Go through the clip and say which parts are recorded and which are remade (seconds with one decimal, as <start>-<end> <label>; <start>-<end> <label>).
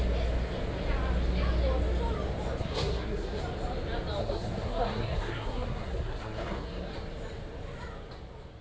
0.0-2.6 recorded; 2.6-3.4 remade; 3.4-4.2 recorded; 4.2-6.9 remade; 6.9-8.6 recorded